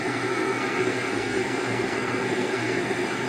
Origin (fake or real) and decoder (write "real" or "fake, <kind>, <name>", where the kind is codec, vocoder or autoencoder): fake, codec, SNAC